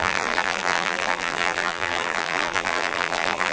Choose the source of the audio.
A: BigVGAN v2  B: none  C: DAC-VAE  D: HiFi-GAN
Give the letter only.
A